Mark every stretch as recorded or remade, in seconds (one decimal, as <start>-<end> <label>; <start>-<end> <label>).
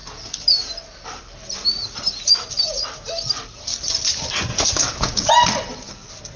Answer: 0.0-4.5 recorded; 4.5-5.3 remade; 5.3-6.4 recorded